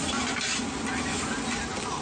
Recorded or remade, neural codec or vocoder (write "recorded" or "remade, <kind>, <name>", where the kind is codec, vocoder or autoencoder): recorded